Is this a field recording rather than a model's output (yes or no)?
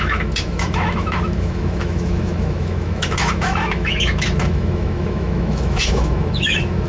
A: no